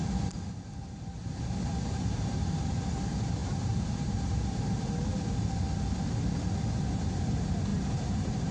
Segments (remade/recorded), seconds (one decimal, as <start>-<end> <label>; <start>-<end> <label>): 0.0-3.4 recorded; 3.4-4.9 remade; 4.9-7.7 recorded; 7.7-8.5 remade